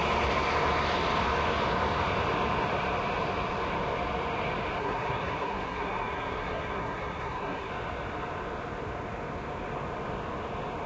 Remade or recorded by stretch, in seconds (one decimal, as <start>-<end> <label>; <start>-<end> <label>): 0.0-4.8 recorded; 4.8-7.7 remade; 7.7-10.9 recorded